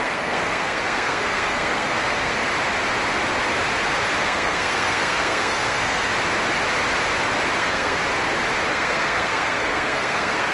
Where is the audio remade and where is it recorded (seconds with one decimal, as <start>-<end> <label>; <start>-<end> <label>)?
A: 0.0-2.4 remade; 2.4-4.2 recorded; 4.2-6.1 remade; 6.1-7.6 recorded; 7.6-8.0 remade; 8.0-8.7 recorded; 8.7-10.5 remade